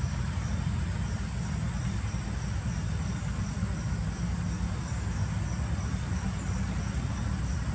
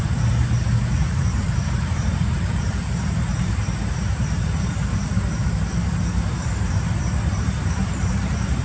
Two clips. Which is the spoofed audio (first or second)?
second